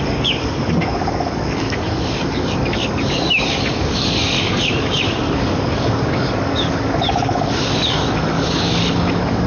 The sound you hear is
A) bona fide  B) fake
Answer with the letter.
B